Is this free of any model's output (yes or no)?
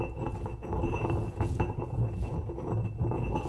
no